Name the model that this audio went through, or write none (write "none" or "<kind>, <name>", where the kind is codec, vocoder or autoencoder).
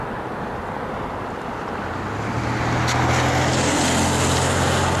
none